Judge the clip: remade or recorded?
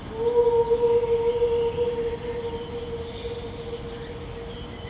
recorded